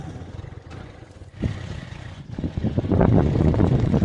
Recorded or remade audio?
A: remade